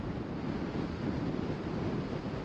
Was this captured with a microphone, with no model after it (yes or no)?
no